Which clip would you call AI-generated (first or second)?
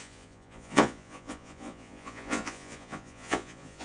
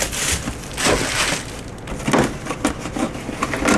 first